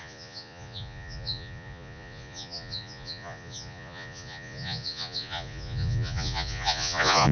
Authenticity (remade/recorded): remade